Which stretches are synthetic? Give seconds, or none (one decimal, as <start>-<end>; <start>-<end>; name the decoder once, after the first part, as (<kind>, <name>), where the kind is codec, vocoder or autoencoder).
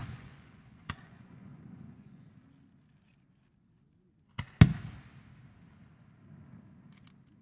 0.0-2.3 (vocoder, Vocos)